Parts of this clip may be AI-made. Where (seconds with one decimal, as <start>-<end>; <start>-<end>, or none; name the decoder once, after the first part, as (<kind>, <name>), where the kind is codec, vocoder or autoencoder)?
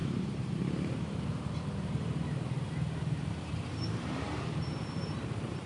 0.0-5.7 (vocoder, BigVGAN v2)